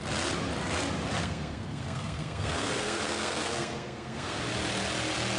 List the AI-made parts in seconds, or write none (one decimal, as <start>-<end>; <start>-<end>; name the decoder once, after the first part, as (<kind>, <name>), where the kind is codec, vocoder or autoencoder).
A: 1.2-4.4 (codec, SNAC)